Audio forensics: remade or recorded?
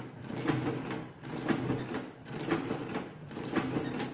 recorded